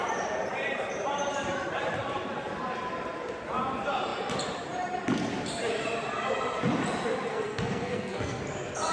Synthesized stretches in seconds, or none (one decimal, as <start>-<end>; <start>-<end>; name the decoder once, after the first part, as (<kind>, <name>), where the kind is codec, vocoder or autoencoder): 7.3-8.4 (codec, SNAC)